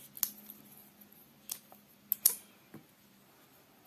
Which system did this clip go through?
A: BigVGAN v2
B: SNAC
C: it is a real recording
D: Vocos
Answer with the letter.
C